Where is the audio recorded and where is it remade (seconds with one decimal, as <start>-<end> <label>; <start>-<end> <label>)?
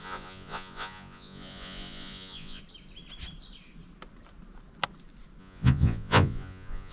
0.0-2.6 remade; 2.6-5.4 recorded; 5.4-6.9 remade